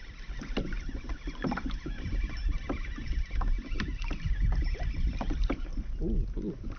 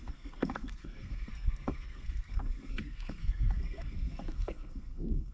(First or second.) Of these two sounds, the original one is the first